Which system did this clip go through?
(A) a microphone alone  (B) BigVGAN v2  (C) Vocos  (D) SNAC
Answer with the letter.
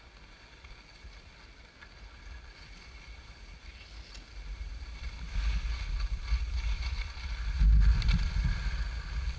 A